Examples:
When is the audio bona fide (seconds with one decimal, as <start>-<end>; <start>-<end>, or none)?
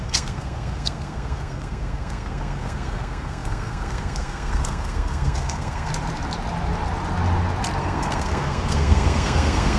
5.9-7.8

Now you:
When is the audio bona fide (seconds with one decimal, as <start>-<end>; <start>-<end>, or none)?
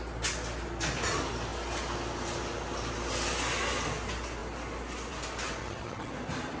0.0-5.6; 6.1-6.6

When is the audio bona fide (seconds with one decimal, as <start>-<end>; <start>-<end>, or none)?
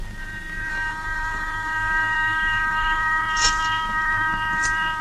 0.0-0.7; 3.2-5.0